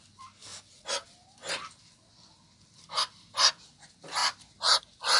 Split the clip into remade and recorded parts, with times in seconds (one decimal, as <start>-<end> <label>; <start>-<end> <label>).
0.0-5.2 recorded

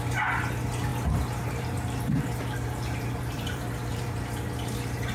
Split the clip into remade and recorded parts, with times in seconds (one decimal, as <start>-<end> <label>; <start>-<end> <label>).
0.0-0.9 recorded; 0.9-4.0 remade; 4.0-5.1 recorded